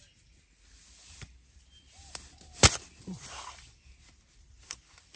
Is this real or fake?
real